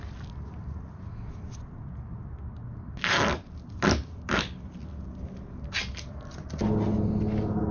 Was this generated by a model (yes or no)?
no